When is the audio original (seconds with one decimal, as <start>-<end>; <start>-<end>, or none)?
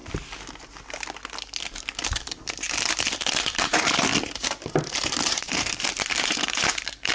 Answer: 0.0-3.1; 4.1-4.8